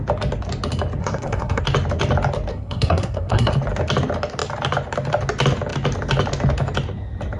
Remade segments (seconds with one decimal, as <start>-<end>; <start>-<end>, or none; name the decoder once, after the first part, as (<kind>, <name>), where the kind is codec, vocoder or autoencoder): 1.0-1.6 (codec, SNAC); 2.5-3.5